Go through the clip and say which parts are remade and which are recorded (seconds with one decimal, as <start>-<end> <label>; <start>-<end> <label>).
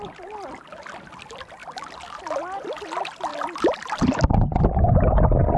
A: 0.0-5.6 recorded